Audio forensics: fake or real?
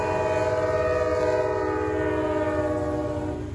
real